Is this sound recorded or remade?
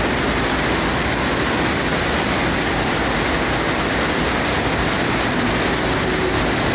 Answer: recorded